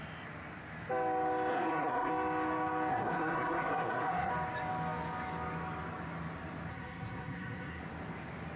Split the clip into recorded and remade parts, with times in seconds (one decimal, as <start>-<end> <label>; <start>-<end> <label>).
0.0-1.5 recorded; 1.5-2.1 remade; 2.1-2.9 recorded; 2.9-4.3 remade; 4.3-6.7 recorded; 6.7-7.8 remade; 7.8-8.6 recorded